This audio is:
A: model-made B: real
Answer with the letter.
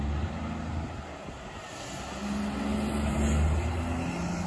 B